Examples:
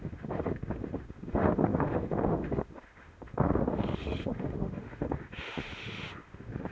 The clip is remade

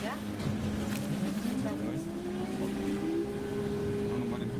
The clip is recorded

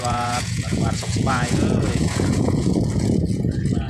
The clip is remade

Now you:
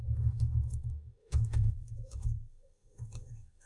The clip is remade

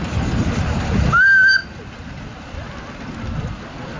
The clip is recorded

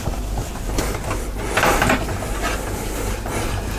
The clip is recorded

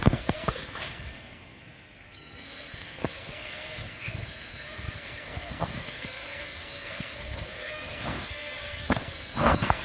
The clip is remade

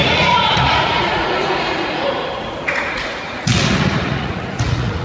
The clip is remade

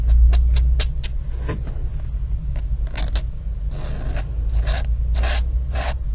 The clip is recorded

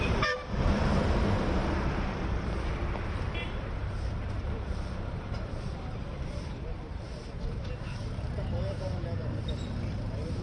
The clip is remade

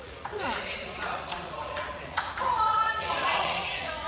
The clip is remade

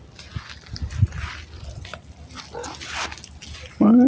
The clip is recorded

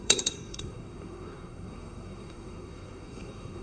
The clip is remade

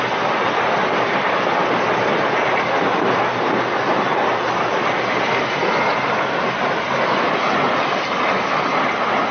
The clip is recorded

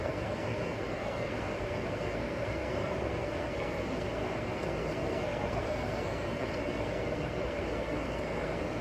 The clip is remade